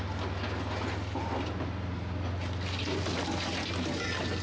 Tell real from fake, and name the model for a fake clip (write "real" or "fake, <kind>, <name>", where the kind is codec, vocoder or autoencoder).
real